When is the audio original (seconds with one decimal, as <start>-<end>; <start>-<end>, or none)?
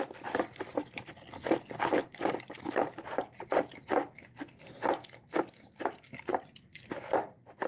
0.0-2.0; 3.6-6.3; 6.9-7.7